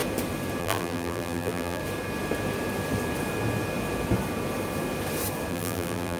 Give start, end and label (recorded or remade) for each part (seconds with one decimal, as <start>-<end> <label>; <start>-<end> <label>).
0.0-0.6 recorded; 0.6-1.8 remade; 1.8-5.5 recorded; 5.5-6.2 remade